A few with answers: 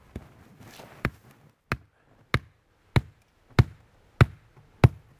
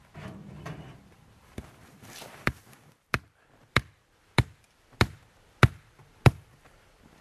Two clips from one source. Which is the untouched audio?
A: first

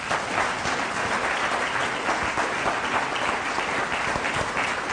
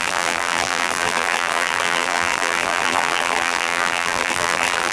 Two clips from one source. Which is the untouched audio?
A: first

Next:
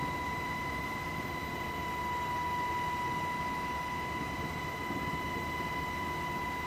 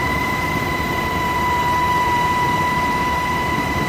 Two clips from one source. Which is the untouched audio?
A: first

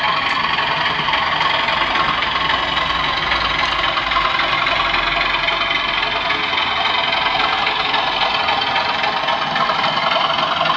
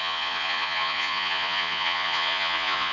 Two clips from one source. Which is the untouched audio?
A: first